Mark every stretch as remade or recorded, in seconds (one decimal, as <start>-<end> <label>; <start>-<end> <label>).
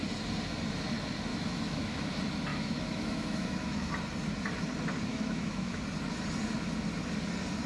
0.0-1.3 recorded; 1.3-2.1 remade; 2.1-2.5 recorded; 2.5-3.9 remade; 3.9-5.1 recorded; 5.1-5.8 remade; 5.8-7.7 recorded